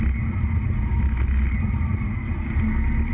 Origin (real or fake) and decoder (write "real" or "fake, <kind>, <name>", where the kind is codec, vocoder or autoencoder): real